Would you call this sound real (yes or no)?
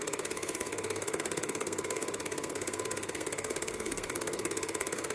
no